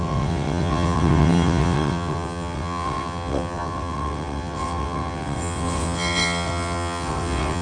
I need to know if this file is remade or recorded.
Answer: remade